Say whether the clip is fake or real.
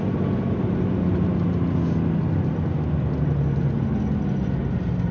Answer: real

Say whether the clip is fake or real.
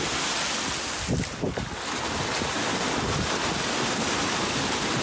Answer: real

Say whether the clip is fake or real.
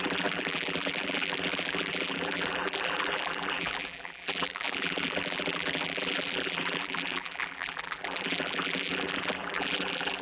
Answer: fake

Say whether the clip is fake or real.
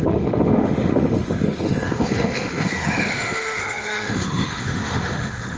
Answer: fake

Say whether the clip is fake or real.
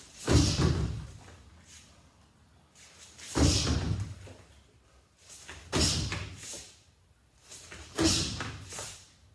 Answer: real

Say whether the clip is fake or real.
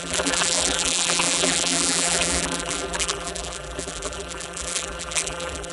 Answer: fake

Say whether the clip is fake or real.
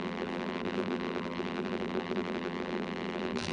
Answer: fake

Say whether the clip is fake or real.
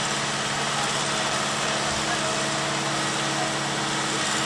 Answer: real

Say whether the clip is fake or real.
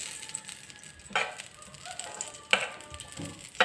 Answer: real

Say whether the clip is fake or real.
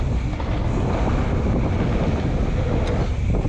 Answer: real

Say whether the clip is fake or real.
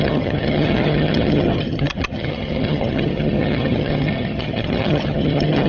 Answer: fake